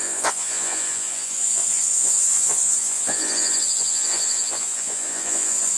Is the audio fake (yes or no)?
yes